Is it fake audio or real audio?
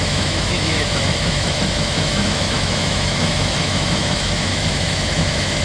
fake